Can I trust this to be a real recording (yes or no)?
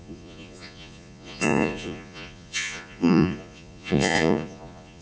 no